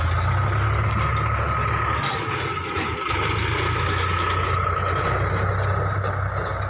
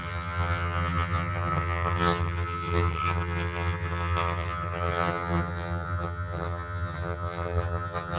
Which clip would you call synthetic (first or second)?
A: second